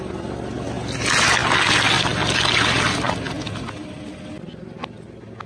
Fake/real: real